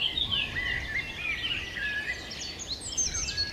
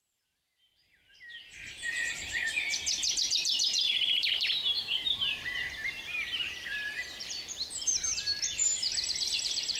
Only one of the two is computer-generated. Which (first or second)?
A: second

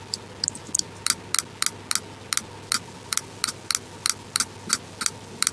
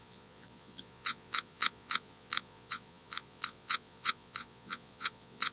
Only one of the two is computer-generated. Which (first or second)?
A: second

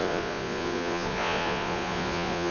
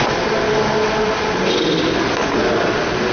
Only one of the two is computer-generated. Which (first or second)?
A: first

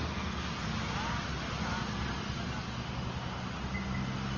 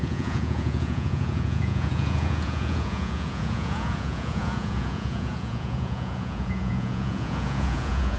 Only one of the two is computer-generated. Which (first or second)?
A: second